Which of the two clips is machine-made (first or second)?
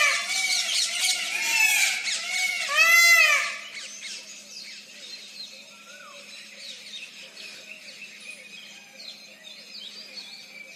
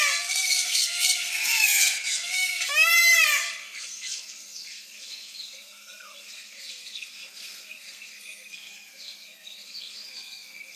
second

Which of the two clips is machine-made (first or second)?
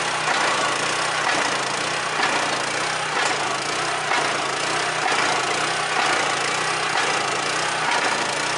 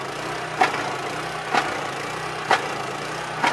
second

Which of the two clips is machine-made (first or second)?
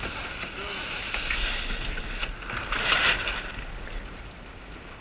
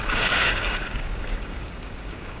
second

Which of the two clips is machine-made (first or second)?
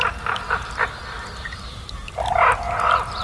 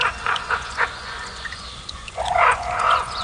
second